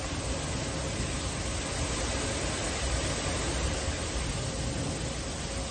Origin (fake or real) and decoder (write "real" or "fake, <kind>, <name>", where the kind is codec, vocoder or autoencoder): real